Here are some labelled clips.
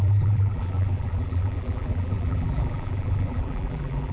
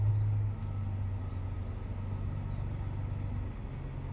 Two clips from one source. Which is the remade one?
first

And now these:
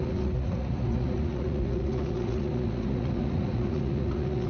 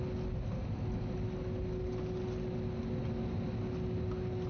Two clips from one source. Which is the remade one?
first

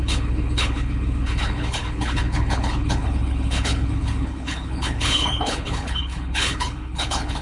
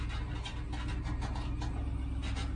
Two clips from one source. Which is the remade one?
first